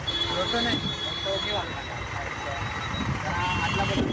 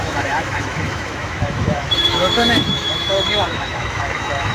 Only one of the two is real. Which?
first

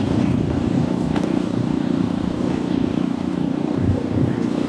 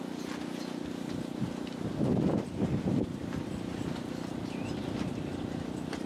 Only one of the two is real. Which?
second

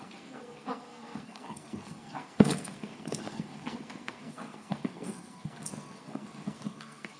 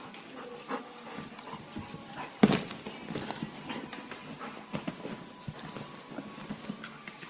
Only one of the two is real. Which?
second